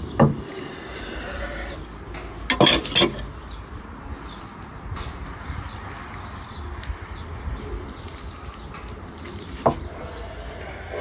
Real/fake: real